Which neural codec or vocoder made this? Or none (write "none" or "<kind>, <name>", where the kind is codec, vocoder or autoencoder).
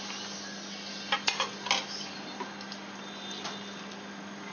none